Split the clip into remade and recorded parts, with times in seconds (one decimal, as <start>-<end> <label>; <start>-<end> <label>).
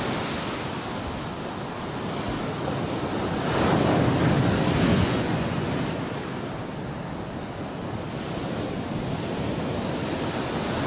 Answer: 0.0-4.9 recorded; 4.9-5.7 remade; 5.7-10.9 recorded